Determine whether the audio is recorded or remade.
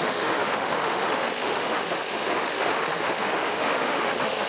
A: remade